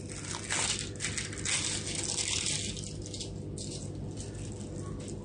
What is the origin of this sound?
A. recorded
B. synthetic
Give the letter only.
A